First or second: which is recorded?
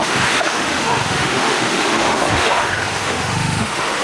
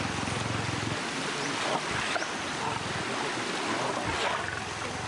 second